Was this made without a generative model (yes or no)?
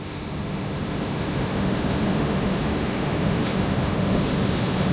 no